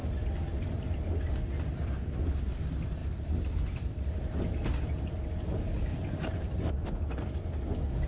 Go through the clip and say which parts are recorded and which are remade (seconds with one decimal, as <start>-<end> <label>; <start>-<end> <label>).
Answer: 0.0-1.1 remade; 1.1-3.0 recorded; 3.0-4.0 remade; 4.0-5.9 recorded; 5.9-6.7 remade; 6.7-8.1 recorded